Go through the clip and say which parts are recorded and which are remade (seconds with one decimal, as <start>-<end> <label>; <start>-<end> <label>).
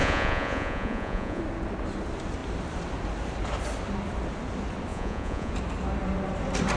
0.0-1.4 remade; 1.4-4.9 recorded; 4.9-5.5 remade; 5.5-6.8 recorded